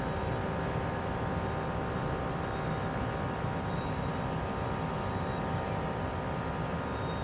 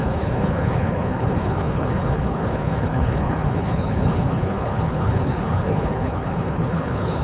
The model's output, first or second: second